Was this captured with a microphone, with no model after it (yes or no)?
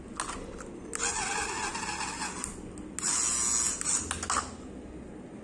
yes